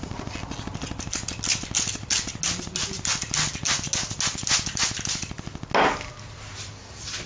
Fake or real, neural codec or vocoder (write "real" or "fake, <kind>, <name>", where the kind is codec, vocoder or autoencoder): real